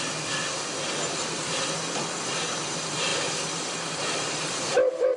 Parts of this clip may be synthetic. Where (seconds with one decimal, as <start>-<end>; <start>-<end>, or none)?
none